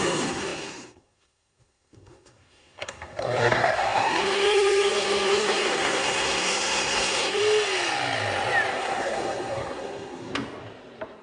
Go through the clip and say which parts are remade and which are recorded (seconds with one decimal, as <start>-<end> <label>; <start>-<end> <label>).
0.0-7.4 remade; 7.4-8.7 recorded; 8.7-10.3 remade; 10.3-11.2 recorded